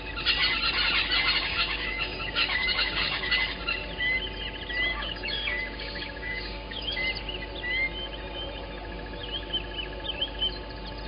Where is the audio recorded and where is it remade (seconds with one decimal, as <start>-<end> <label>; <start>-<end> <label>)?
0.0-1.4 recorded; 1.4-3.3 remade; 3.3-4.9 recorded; 4.9-7.0 remade; 7.0-11.1 recorded